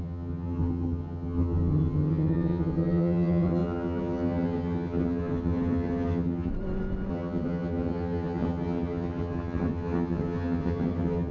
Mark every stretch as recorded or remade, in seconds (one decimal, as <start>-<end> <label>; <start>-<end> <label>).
0.0-6.5 remade; 6.5-7.1 recorded; 7.1-11.3 remade